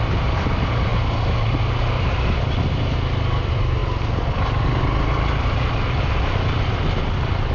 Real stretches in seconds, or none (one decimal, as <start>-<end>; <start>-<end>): 0.0-7.5